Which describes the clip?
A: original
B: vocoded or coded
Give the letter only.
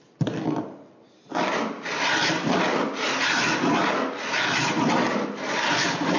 A